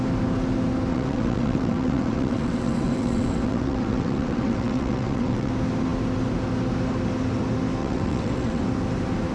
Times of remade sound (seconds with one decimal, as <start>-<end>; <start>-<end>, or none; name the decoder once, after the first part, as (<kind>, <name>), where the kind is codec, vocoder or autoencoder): 0.9-5.5 (vocoder, WaveNeXt); 7.8-8.6